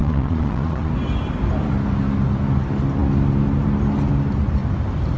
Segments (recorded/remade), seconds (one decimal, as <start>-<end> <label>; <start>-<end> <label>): 0.0-0.9 remade; 0.9-5.2 recorded